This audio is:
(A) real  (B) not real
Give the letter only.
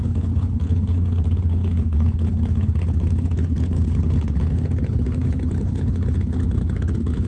B